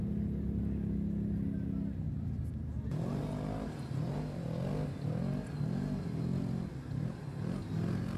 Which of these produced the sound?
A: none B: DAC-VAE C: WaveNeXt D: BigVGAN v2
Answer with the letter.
A